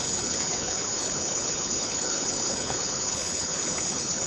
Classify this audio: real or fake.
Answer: fake